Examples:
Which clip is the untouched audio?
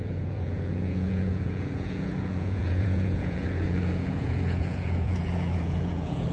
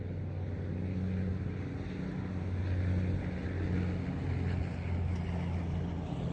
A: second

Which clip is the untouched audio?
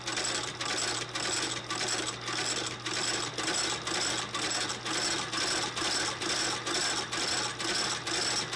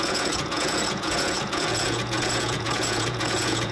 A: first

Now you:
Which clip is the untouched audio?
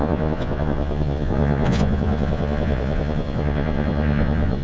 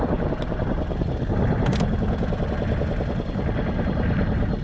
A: second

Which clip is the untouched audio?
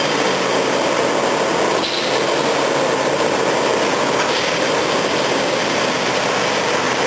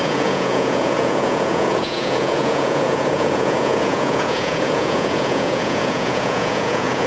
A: first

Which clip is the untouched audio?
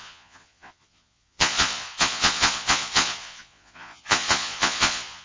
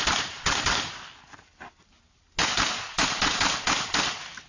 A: second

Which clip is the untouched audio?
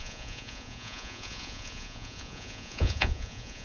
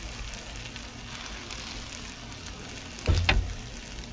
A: second